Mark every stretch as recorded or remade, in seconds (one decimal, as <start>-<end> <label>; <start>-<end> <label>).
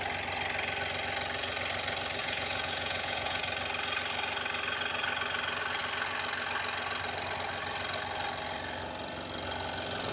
0.0-2.2 recorded; 2.2-3.4 remade; 3.4-10.1 recorded